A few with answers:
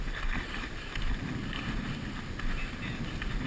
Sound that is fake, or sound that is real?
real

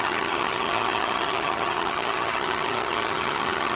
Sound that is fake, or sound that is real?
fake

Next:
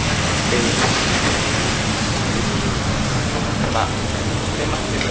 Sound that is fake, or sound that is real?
real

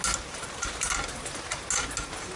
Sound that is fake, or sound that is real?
real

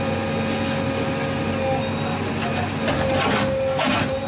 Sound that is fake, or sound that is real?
real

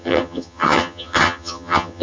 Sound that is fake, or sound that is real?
fake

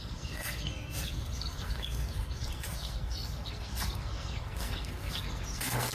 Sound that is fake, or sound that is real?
fake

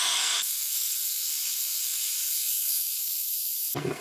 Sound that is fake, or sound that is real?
fake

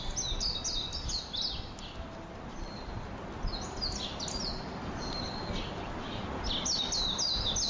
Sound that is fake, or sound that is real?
real